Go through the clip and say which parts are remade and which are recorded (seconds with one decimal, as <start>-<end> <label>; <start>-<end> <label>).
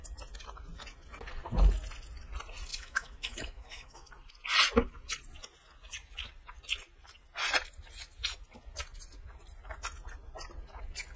0.0-2.7 recorded; 2.7-4.1 remade; 4.1-11.2 recorded